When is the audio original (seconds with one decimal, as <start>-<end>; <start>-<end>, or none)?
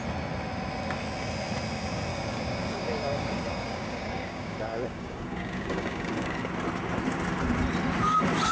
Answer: 0.0-2.1; 6.4-8.5